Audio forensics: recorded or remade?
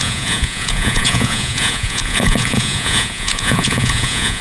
remade